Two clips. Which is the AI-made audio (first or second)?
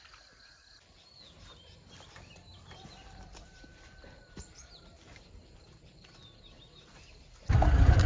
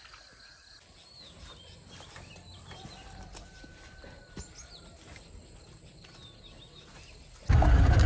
first